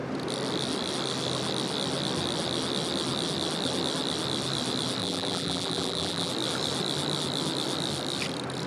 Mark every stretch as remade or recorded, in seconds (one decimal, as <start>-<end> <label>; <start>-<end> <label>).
0.0-5.0 recorded; 5.0-6.3 remade; 6.3-8.7 recorded